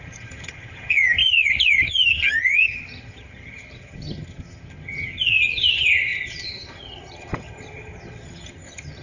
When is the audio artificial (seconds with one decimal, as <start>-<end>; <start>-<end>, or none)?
0.0-9.0

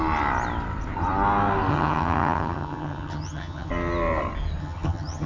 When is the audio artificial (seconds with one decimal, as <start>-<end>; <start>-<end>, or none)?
1.7-3.7; 4.6-5.3